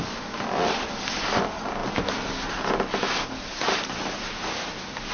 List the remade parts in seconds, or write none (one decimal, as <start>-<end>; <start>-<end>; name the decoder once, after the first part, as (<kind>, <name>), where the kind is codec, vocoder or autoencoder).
none